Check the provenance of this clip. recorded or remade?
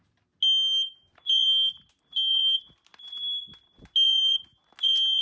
recorded